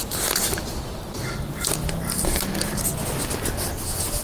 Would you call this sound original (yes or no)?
yes